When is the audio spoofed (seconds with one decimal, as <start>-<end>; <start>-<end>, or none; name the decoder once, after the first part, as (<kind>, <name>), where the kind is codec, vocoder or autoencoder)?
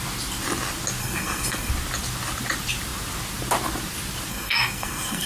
1.0-1.7 (codec, SNAC); 4.3-5.3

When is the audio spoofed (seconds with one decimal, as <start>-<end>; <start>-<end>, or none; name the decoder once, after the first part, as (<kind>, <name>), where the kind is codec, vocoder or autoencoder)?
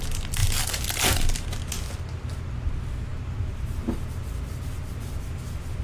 none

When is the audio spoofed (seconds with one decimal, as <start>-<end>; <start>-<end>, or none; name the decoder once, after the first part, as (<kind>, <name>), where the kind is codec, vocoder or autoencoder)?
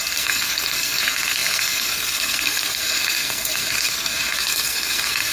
0.0-5.3 (codec, SNAC)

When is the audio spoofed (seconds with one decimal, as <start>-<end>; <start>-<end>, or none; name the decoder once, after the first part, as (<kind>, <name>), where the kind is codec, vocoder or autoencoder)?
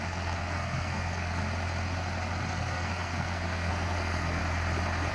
0.0-1.4 (codec, SNAC); 2.5-4.4